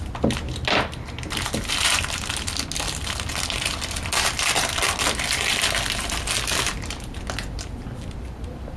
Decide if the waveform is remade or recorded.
recorded